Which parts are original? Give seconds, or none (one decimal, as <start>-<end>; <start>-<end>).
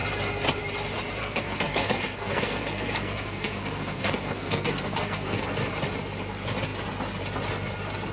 0.0-1.2; 5.4-8.1